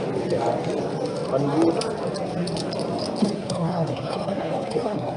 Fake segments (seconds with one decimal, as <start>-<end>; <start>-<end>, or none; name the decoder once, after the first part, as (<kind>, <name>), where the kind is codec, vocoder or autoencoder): 3.2-5.2 (codec, SNAC)